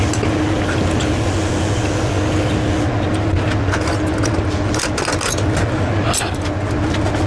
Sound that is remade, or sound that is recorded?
recorded